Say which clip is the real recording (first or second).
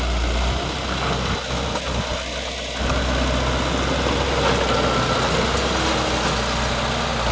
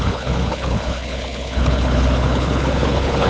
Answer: first